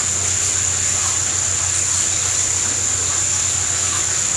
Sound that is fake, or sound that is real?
real